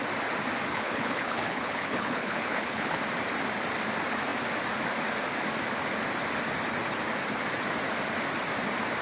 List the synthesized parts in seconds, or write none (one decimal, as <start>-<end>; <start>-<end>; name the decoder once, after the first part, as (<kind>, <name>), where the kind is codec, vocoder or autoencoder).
0.7-3.0 (codec, HILCodec)